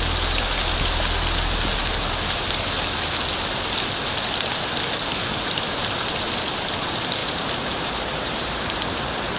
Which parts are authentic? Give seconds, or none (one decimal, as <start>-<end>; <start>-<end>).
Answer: 0.0-5.2; 6.3-7.2; 9.0-9.4